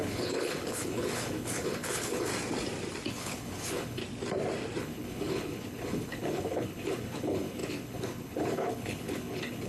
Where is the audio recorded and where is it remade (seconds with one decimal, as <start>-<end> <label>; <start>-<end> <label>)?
0.0-2.3 remade; 2.3-3.1 recorded; 3.1-4.0 remade; 4.0-4.8 recorded; 4.8-9.7 remade